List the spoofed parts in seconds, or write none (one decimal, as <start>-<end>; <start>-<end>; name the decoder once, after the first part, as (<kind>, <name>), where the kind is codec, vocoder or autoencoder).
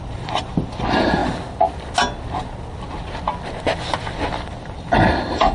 0.0-1.2 (vocoder, BigVGAN v2); 4.1-5.5